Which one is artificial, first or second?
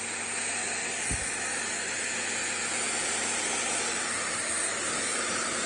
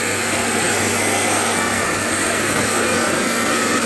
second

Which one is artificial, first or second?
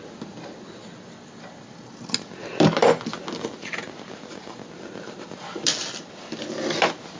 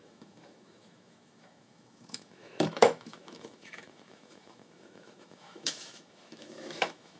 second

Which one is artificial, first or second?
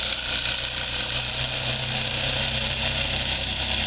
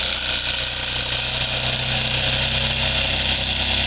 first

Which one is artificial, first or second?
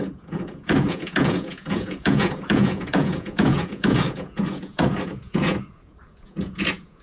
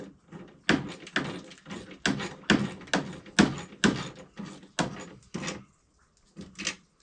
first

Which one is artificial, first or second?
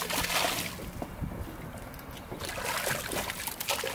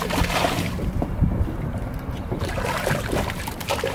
second